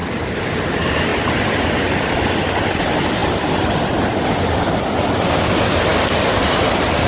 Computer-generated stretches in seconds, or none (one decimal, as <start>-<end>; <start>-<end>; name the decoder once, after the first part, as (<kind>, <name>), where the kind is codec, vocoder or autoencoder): none